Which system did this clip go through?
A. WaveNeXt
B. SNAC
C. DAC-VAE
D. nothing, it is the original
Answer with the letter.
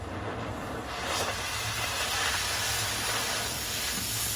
D